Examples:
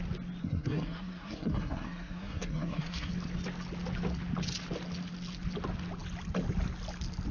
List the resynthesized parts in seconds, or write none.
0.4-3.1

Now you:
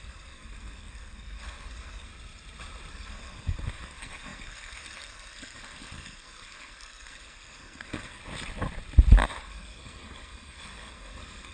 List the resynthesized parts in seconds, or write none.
0.0-2.1; 2.9-8.2; 9.4-11.5

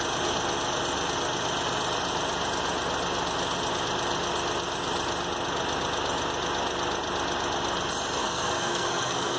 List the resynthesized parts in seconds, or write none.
8.2-9.4

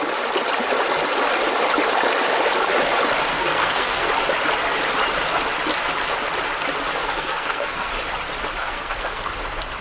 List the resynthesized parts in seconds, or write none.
3.3-4.1; 7.0-7.9; 8.6-9.2

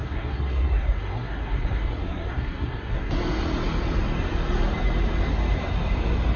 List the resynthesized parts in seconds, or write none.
0.0-3.1

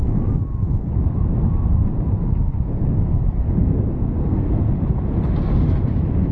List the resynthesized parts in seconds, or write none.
4.2-4.7